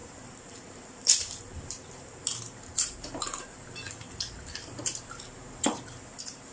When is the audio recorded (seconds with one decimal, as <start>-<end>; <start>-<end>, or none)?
none